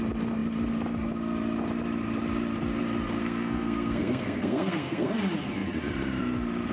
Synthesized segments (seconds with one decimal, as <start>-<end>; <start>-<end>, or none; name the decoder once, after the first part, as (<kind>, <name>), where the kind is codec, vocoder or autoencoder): 3.2-5.1 (codec, SNAC)